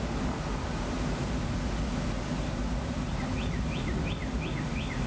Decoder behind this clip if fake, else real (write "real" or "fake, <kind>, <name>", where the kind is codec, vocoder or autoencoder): real